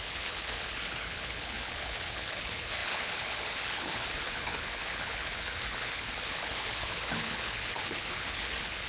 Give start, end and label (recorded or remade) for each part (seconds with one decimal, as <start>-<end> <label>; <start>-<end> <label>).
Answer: 0.0-8.9 remade